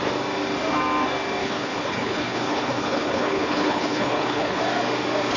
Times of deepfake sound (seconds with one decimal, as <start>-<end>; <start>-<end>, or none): 1.4-4.6

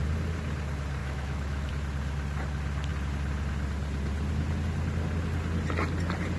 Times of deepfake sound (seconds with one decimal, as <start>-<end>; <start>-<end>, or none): 1.0-1.7

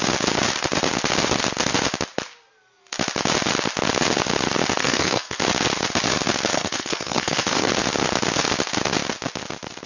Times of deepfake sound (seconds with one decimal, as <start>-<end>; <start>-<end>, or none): 4.8-5.4; 6.5-7.7